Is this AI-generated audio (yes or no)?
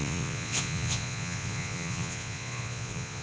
yes